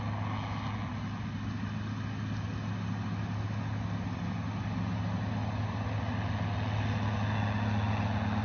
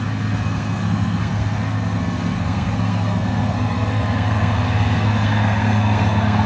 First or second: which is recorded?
first